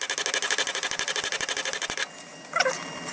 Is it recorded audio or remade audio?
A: recorded